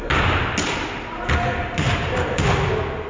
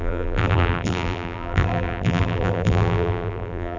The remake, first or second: second